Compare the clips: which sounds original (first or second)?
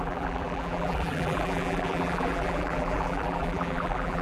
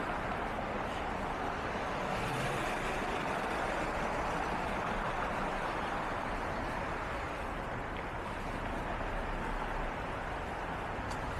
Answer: second